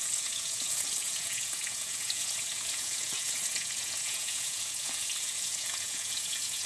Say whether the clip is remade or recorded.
remade